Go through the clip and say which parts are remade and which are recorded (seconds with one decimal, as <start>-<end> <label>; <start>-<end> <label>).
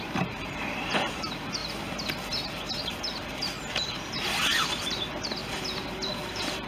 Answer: 0.0-1.6 remade; 1.6-2.7 recorded; 2.7-5.4 remade; 5.4-6.1 recorded; 6.1-6.7 remade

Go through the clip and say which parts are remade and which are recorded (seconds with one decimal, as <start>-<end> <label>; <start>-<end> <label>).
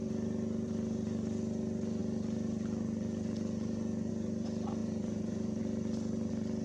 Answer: 0.0-4.8 recorded; 4.8-5.6 remade; 5.6-6.6 recorded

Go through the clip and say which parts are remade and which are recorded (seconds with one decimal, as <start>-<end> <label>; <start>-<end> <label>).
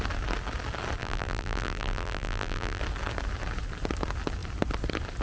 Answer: 0.0-1.0 recorded; 1.0-2.8 remade; 2.8-5.2 recorded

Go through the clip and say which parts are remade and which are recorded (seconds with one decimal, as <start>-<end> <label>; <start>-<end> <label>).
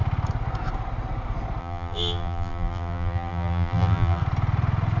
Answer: 0.0-1.6 recorded; 1.6-4.2 remade; 4.2-5.0 recorded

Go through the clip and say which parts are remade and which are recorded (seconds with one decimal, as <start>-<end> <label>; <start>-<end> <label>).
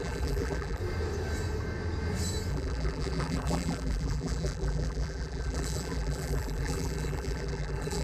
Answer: 0.0-0.8 remade; 0.8-2.5 recorded; 2.5-8.0 remade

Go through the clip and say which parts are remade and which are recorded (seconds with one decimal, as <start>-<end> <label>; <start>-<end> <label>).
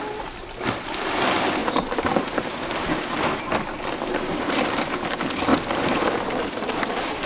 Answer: 0.0-7.3 recorded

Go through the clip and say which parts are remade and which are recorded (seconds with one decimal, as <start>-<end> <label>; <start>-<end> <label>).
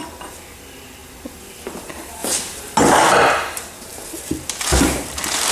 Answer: 0.0-2.2 recorded; 2.2-2.8 remade; 2.8-5.5 recorded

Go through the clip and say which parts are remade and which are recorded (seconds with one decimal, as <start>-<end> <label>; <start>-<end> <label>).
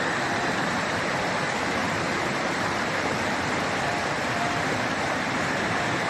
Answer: 0.0-6.1 remade